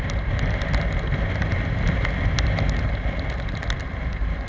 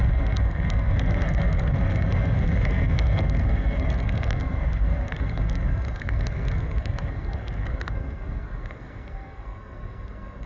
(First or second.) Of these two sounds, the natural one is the first